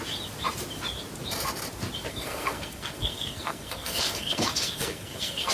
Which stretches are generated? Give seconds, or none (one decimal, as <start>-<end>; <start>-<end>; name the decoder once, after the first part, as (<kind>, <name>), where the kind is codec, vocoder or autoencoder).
2.1-5.5 (codec, SNAC)